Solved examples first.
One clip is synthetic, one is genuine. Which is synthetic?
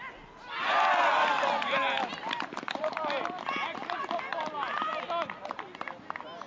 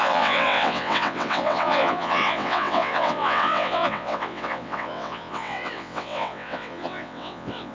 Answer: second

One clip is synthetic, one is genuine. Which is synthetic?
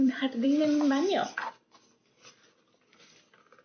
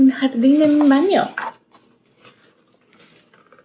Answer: first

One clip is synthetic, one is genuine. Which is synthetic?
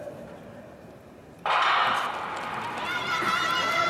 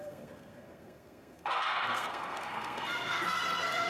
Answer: second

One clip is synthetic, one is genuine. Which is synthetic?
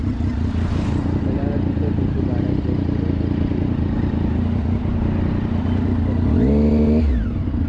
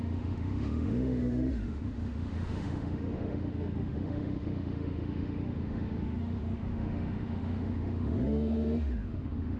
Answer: second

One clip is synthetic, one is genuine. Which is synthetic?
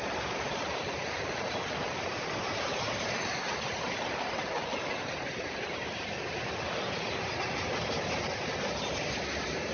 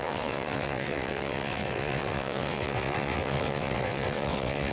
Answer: second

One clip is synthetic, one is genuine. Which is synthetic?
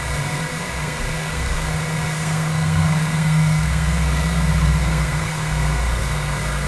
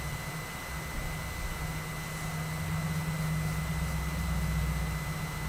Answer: first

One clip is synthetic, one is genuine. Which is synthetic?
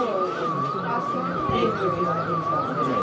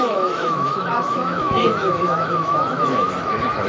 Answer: second